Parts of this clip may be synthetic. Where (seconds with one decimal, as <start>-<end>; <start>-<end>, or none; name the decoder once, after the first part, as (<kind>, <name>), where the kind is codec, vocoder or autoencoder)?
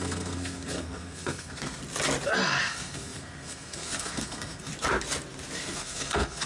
0.0-1.8 (codec, SNAC); 2.6-4.7; 5.6-6.5